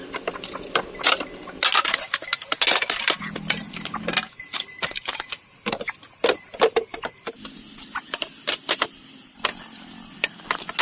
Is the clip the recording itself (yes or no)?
yes